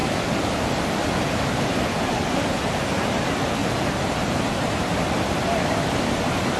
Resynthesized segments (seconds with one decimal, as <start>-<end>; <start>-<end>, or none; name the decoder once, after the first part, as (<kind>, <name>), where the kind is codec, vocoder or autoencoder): 3.6-6.0 (vocoder, BigVGAN v2)